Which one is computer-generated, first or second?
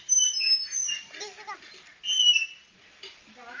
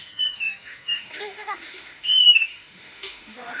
second